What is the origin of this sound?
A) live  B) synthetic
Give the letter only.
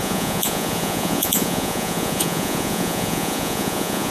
B